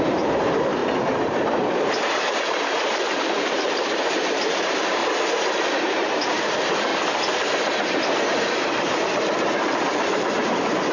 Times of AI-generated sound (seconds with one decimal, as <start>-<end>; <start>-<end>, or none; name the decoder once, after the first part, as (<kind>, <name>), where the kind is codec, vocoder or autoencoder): 0.0-5.0 (vocoder, BigVGAN v2); 5.8-6.9; 8.5-10.9